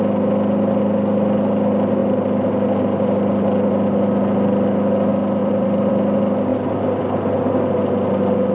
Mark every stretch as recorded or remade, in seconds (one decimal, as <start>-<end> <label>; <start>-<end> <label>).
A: 0.0-5.4 recorded; 5.4-5.9 remade; 5.9-8.5 recorded